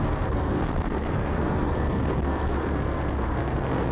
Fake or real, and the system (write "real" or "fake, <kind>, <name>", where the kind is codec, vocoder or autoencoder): fake, codec, SNAC